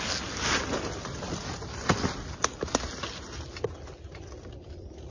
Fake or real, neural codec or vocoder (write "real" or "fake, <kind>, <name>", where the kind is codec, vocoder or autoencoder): real